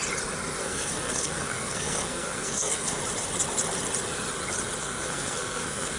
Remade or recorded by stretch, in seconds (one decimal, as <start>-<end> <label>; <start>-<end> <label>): 0.0-0.6 recorded; 0.6-3.0 remade; 3.0-4.8 recorded; 4.8-6.0 remade